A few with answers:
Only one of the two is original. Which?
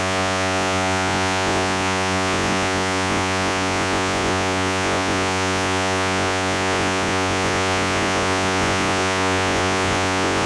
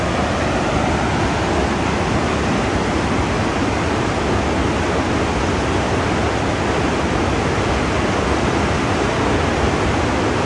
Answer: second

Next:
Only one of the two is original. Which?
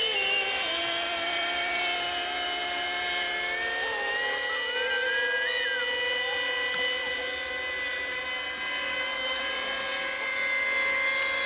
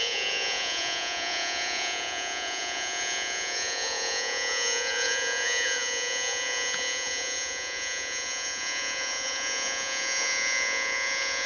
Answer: first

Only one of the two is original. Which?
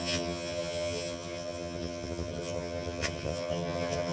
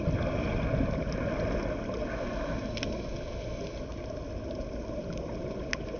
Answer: second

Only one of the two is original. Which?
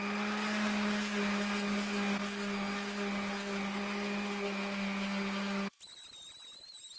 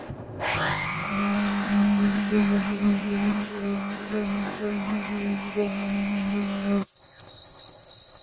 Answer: first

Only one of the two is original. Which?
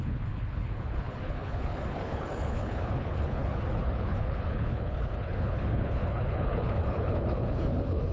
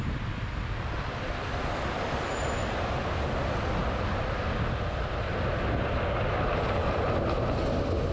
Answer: second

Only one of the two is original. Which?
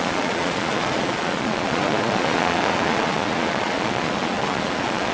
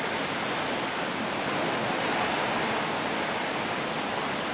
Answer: second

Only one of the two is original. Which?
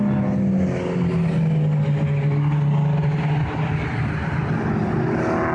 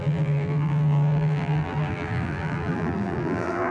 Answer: first